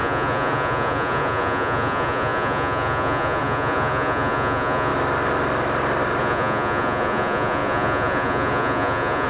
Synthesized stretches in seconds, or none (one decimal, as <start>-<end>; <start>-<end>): 0.0-4.9; 6.2-9.3